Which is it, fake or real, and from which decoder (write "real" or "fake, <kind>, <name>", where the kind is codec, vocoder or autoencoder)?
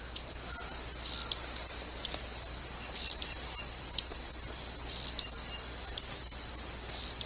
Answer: real